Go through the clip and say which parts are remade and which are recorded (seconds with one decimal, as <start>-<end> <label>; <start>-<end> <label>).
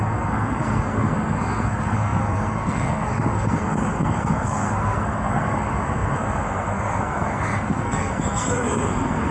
0.0-9.3 remade